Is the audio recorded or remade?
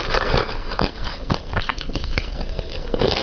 remade